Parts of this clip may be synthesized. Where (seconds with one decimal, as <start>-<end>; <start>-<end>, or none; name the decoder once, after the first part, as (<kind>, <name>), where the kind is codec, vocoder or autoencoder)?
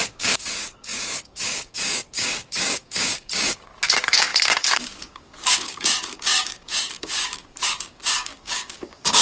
0.0-9.2 (codec, DAC)